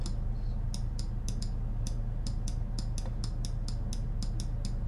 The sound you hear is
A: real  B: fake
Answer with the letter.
A